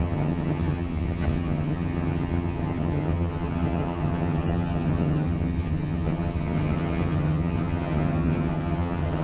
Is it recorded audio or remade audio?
remade